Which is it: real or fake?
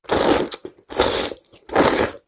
real